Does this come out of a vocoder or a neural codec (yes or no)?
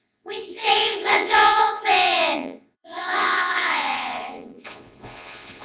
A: yes